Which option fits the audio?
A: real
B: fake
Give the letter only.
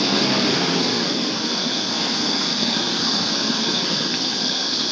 B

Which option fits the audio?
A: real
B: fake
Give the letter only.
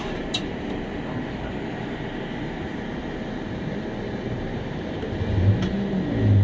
A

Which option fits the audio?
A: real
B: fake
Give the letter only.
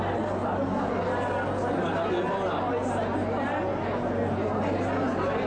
A